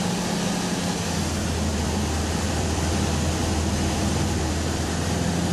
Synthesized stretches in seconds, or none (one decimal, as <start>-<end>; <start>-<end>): 1.7-5.0